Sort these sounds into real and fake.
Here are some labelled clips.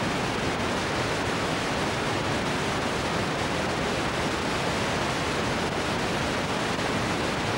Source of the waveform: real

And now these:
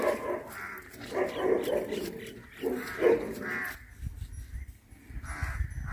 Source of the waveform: real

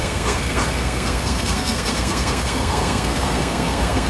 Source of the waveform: fake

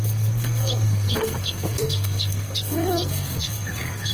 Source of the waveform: fake